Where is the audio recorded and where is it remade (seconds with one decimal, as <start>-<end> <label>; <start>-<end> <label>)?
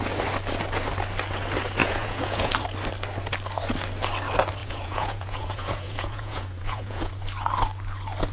0.0-1.8 recorded; 1.8-2.5 remade; 2.5-4.6 recorded; 4.6-7.1 remade; 7.1-8.3 recorded